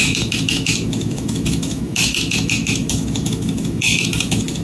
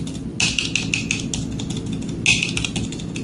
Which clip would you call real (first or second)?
second